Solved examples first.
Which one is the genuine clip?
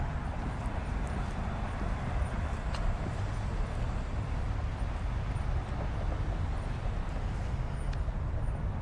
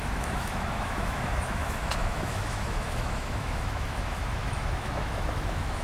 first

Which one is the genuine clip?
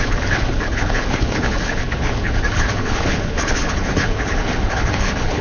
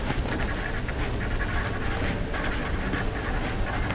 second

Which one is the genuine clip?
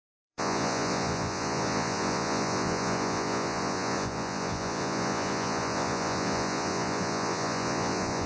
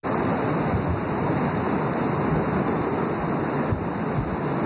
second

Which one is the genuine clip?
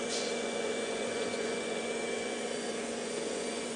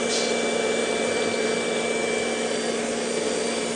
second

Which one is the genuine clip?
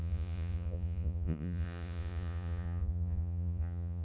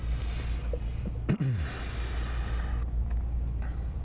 second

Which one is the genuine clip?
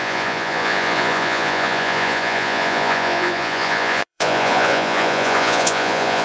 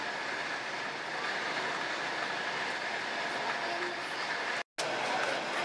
second